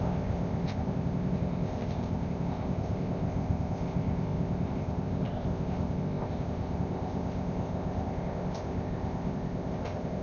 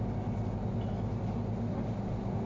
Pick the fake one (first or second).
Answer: first